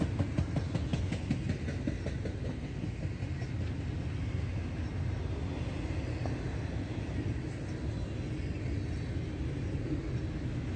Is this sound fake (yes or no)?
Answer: no